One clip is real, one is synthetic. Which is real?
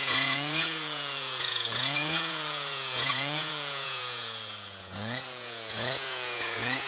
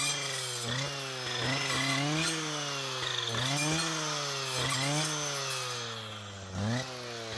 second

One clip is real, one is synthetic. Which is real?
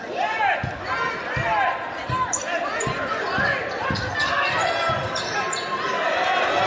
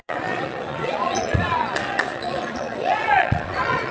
first